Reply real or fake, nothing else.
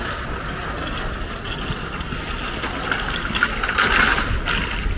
real